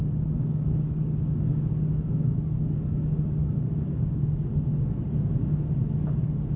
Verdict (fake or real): fake